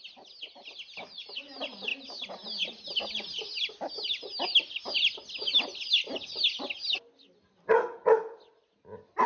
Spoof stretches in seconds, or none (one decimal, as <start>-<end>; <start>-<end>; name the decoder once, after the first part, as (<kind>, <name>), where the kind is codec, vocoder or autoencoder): none